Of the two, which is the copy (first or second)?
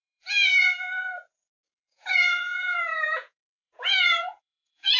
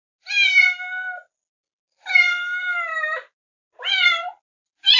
first